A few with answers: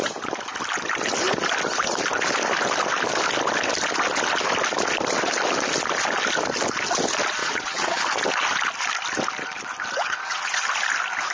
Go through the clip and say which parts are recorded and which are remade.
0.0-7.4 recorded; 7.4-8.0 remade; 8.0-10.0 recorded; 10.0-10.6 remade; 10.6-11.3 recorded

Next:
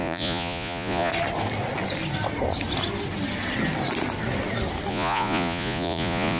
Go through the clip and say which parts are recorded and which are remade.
0.0-1.1 remade; 1.1-4.9 recorded; 4.9-6.4 remade

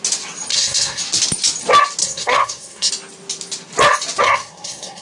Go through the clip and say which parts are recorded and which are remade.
0.0-0.5 recorded; 0.5-1.0 remade; 1.0-2.0 recorded; 2.0-2.9 remade; 2.9-4.2 recorded; 4.2-5.0 remade

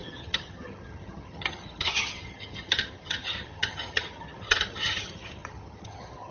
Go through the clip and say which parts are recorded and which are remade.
0.0-6.3 remade

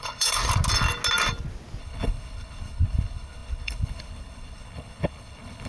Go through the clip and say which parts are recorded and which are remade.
0.0-0.4 remade; 0.4-1.8 recorded; 1.8-5.7 remade